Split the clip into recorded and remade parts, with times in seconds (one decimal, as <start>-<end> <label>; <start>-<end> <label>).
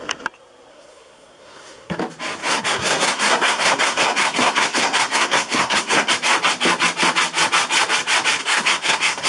0.0-0.7 recorded; 0.7-2.0 remade; 2.0-2.4 recorded; 2.4-6.1 remade; 6.1-8.4 recorded; 8.4-9.3 remade